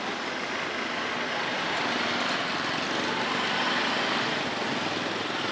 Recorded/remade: recorded